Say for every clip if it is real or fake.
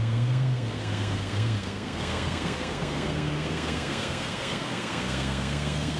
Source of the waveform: fake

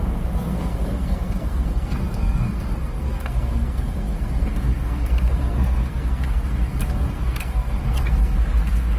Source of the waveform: fake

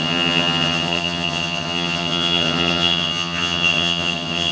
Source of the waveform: fake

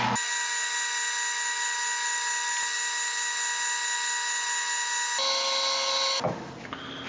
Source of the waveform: real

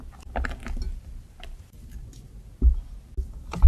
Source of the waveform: real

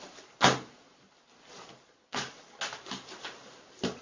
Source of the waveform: real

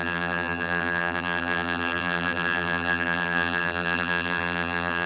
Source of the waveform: fake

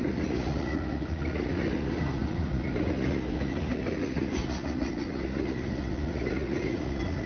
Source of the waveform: fake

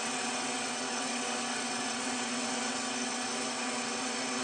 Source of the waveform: fake